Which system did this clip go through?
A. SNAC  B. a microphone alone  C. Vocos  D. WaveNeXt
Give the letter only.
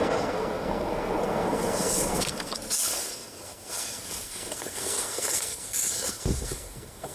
A